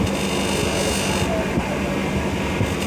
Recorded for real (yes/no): yes